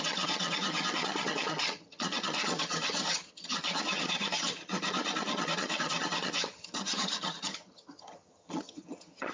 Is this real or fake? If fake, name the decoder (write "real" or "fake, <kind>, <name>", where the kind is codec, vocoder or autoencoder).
fake, vocoder, HiFi-GAN